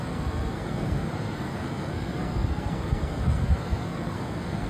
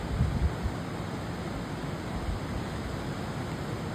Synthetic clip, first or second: first